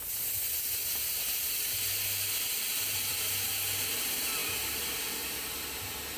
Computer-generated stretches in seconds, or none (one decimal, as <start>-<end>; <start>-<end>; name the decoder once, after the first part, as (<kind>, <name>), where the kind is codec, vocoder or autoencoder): none